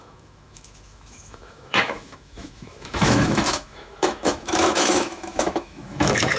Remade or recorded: remade